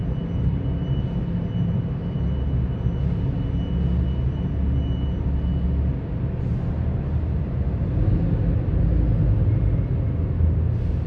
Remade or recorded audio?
recorded